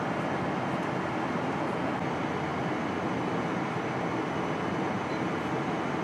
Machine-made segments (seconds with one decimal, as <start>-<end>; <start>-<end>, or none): none